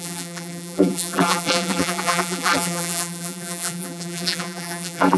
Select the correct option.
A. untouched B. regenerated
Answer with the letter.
B